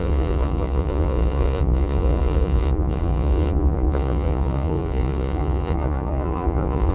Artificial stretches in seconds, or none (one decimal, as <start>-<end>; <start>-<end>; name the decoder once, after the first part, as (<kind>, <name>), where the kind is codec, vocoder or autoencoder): 0.0-6.9 (vocoder, Vocos)